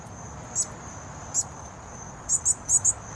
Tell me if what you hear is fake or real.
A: real